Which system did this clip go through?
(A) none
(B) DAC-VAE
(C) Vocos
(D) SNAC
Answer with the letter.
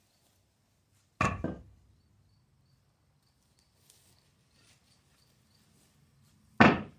A